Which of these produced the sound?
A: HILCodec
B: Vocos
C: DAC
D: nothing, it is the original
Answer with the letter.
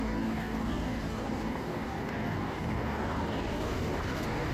C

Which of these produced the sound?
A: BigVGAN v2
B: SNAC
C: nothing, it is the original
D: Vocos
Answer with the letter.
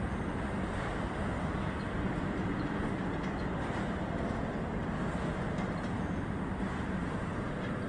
C